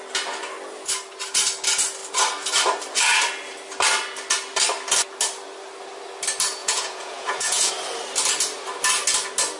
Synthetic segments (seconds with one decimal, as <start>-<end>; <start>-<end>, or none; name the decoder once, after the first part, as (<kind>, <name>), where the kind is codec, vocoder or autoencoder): 6.6-7.7 (vocoder, Vocos)